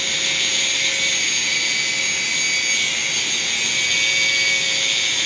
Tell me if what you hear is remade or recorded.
recorded